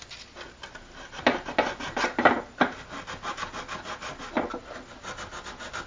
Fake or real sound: real